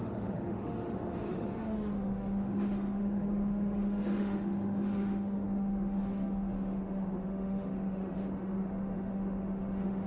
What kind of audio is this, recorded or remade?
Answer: remade